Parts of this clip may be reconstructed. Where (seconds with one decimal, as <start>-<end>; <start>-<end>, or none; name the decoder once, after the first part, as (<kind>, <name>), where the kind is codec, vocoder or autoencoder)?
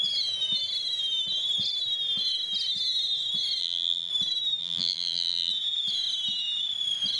3.6-4.1 (vocoder, BigVGAN v2); 4.6-5.5